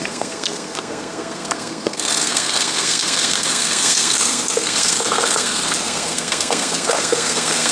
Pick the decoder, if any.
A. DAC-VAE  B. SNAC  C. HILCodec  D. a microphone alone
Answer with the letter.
B